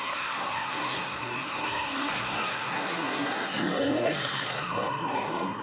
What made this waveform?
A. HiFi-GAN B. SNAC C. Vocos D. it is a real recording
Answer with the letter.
B